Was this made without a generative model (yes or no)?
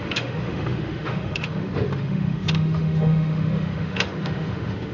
no